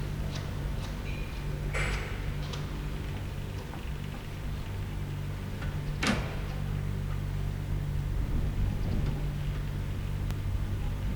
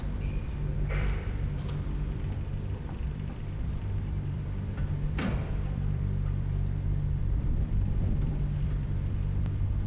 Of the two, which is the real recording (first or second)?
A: first